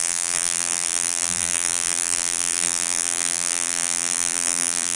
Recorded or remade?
remade